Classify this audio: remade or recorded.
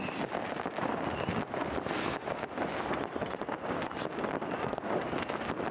recorded